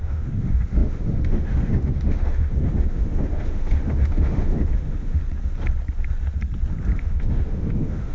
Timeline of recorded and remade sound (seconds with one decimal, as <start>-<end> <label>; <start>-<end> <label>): 0.0-5.2 remade; 5.2-7.0 recorded; 7.0-8.1 remade